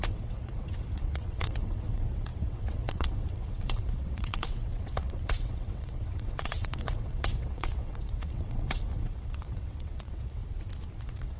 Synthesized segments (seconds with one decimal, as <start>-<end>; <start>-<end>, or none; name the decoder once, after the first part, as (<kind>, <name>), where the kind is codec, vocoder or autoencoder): 0.0-10.4 (vocoder, WaveNeXt); 11.0-11.4